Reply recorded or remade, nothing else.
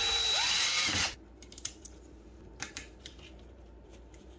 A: remade